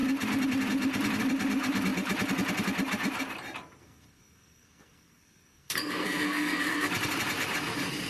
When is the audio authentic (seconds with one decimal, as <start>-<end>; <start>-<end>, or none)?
0.0-3.8; 6.9-8.1